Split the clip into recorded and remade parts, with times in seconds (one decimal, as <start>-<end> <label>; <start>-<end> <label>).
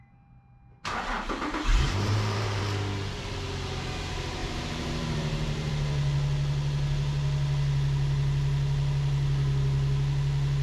0.0-1.7 recorded; 1.7-2.6 remade; 2.6-4.4 recorded; 4.4-5.7 remade; 5.7-10.6 recorded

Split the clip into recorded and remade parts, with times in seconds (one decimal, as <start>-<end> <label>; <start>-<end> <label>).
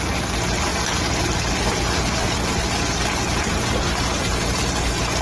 0.0-5.2 recorded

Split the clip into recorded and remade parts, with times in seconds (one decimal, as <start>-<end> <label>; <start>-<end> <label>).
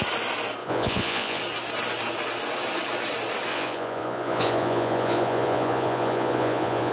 0.0-0.6 recorded; 0.6-1.4 remade; 1.4-3.5 recorded; 3.5-6.9 remade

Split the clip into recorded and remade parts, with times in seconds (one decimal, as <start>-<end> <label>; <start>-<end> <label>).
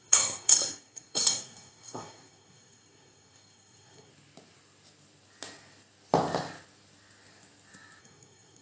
0.0-4.1 remade; 4.1-8.0 recorded; 8.0-8.6 remade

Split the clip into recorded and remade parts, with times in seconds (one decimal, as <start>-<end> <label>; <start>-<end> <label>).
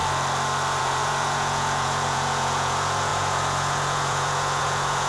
0.0-0.8 recorded; 0.8-5.1 remade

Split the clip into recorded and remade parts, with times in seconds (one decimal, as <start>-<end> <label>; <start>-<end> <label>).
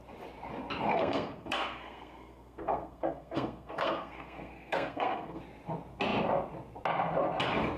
0.0-0.9 recorded; 0.9-5.4 remade; 5.4-7.8 recorded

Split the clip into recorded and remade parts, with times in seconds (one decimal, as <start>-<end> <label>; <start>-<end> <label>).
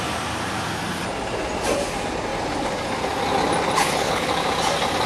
0.0-3.8 recorded; 3.8-4.3 remade; 4.3-5.1 recorded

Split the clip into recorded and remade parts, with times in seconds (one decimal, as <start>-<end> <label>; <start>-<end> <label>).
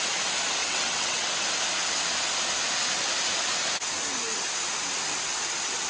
0.0-0.6 recorded; 0.6-1.3 remade; 1.3-5.9 recorded